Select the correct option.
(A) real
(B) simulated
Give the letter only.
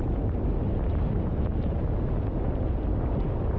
A